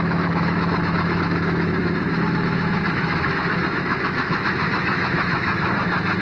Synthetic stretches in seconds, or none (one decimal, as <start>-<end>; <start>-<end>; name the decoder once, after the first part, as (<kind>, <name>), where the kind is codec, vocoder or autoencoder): 0.0-6.2 (autoencoder, DAC-VAE)